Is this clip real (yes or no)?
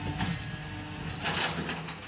yes